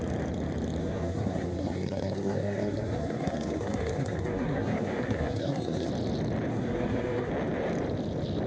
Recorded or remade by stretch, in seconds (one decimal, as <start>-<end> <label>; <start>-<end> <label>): 0.0-0.8 recorded; 0.8-5.9 remade; 5.9-6.5 recorded; 6.5-7.3 remade; 7.3-8.5 recorded